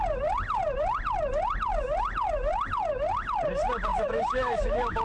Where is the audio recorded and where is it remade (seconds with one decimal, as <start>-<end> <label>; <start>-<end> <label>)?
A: 0.0-3.9 recorded; 3.9-5.0 remade